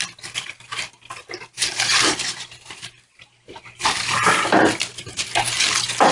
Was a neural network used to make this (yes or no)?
no